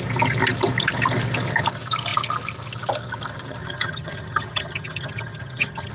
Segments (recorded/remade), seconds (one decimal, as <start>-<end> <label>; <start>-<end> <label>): 0.0-3.6 recorded; 3.6-5.9 remade